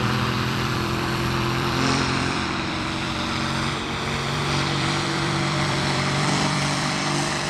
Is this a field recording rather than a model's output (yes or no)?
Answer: no